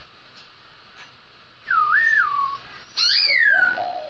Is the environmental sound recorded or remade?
remade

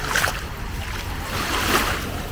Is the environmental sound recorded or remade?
recorded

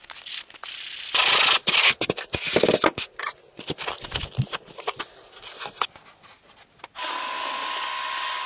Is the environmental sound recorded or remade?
recorded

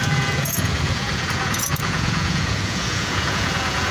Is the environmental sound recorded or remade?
remade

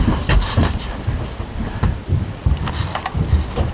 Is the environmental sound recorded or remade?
recorded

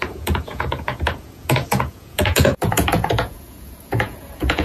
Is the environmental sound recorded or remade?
remade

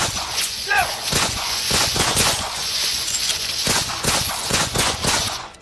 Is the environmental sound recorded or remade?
remade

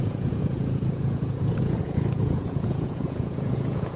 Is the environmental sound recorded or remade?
remade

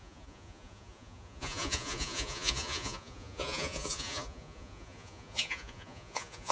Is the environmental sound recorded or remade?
remade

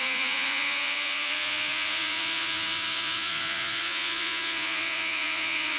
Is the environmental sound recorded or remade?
remade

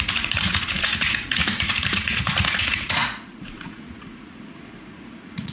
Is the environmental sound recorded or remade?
remade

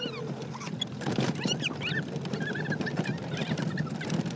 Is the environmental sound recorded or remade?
recorded